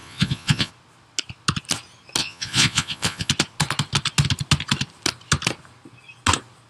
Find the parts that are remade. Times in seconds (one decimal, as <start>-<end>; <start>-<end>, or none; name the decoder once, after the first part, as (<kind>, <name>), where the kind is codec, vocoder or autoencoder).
0.0-0.7 (vocoder, Vocos); 2.2-3.3